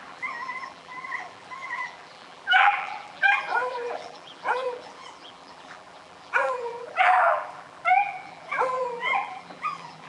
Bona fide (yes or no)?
no